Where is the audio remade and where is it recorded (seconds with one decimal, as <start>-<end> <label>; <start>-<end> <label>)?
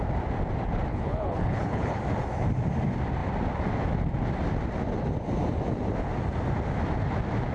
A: 0.0-0.9 recorded; 0.9-2.0 remade; 2.0-7.5 recorded